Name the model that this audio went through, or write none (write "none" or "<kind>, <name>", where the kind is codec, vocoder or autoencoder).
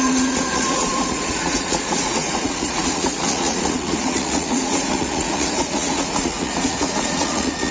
vocoder, Vocos